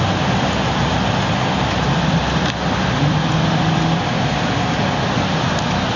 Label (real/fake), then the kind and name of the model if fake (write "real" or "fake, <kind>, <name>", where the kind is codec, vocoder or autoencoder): real